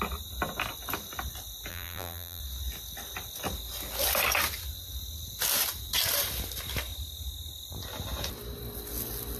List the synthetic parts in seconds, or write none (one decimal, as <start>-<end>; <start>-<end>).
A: 1.7-2.4